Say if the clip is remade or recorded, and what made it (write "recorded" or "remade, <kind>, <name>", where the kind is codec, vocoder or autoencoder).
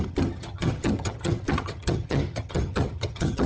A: remade, vocoder, HiFi-GAN